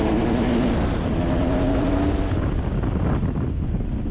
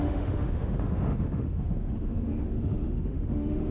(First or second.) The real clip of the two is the first